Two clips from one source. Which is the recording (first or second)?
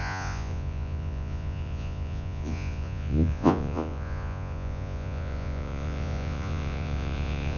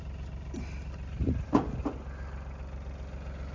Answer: second